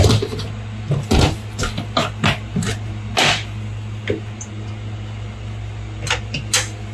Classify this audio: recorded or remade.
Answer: recorded